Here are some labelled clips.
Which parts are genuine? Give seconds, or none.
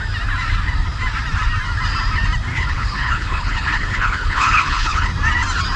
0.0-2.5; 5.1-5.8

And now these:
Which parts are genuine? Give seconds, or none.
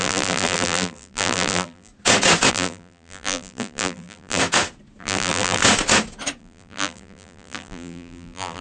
1.9-2.5; 4.4-5.0; 5.6-6.4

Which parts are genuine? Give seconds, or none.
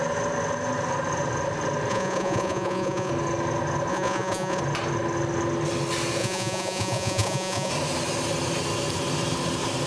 0.0-1.9; 3.1-3.9; 4.6-6.2; 7.7-9.9